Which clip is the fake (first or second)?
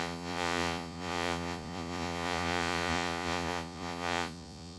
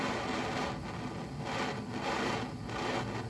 first